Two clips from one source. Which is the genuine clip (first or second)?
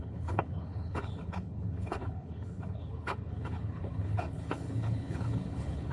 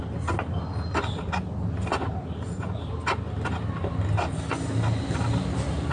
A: second